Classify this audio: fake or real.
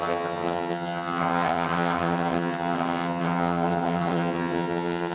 fake